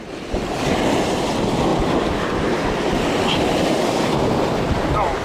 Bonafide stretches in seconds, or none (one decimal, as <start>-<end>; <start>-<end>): 0.0-5.2

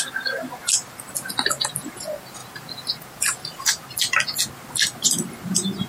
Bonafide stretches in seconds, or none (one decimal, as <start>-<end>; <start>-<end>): 0.0-5.9

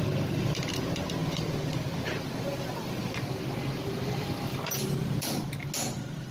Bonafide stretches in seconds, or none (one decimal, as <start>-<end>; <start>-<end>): 0.0-4.5; 5.2-6.3

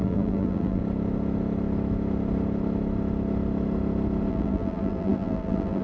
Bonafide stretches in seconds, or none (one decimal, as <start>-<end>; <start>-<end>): 0.8-4.3

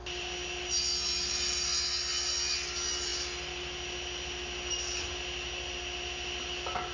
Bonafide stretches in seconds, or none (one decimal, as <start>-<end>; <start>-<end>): 0.0-6.9

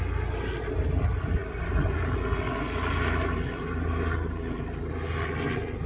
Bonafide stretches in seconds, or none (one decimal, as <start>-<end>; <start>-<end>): 0.0-5.9

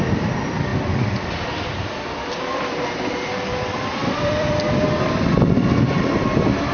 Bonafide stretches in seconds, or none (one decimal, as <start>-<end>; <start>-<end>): 0.0-4.0; 4.6-6.7